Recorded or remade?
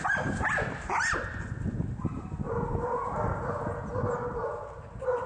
recorded